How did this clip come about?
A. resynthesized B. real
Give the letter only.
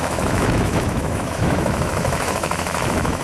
A